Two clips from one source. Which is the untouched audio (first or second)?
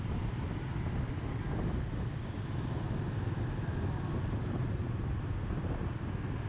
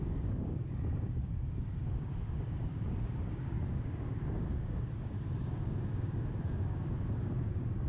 first